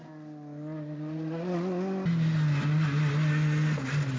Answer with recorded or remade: recorded